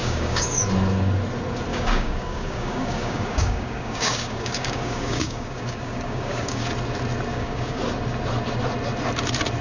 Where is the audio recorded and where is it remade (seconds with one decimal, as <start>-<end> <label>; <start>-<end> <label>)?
0.0-0.6 remade; 0.6-1.7 recorded; 1.7-6.6 remade; 6.6-7.3 recorded; 7.3-7.8 remade; 7.8-9.6 recorded